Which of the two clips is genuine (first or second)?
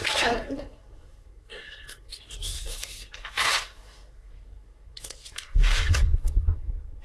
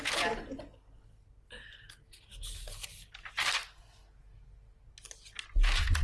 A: second